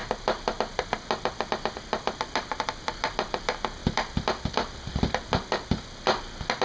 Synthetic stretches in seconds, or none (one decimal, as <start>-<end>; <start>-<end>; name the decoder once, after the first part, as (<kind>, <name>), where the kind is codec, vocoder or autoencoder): none